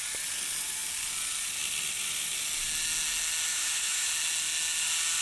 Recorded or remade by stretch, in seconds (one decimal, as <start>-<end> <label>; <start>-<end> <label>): 0.0-3.5 recorded; 3.5-4.1 remade; 4.1-5.2 recorded